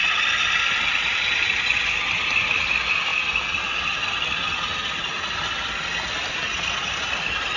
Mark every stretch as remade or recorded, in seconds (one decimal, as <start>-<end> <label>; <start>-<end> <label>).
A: 0.0-7.6 recorded